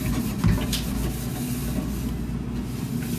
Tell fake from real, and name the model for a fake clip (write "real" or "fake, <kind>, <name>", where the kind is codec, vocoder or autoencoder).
real